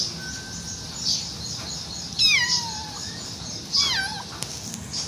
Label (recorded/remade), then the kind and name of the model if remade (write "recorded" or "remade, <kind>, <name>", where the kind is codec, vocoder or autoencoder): recorded